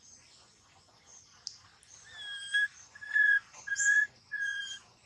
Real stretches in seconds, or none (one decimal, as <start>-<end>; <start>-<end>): 1.1-2.8